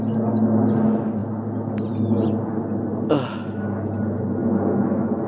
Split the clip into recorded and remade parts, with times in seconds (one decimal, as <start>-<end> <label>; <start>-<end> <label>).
0.0-5.3 recorded